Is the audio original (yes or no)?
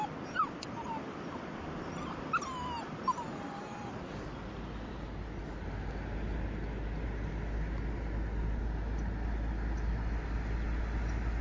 yes